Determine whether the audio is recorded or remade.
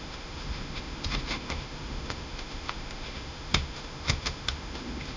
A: remade